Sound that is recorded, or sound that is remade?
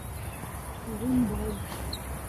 remade